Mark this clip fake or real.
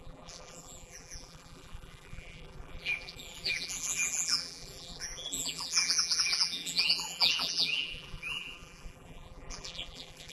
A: fake